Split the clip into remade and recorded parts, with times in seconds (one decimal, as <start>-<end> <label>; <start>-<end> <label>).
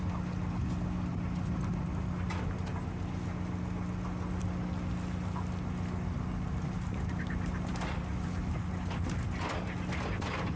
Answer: 0.0-10.6 recorded